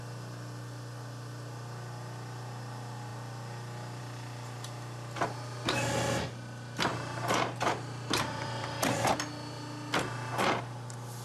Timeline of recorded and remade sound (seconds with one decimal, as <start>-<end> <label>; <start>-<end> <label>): 0.0-6.9 recorded; 6.9-9.0 remade; 9.0-11.2 recorded